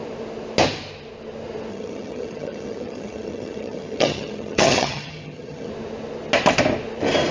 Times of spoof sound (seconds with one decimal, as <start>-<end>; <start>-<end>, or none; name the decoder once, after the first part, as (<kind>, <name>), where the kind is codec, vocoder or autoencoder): 1.7-5.7 (vocoder, HiFi-GAN)